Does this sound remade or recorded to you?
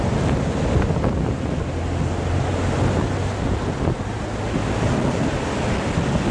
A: recorded